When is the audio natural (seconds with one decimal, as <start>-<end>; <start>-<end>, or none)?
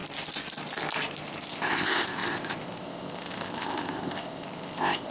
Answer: 0.0-1.5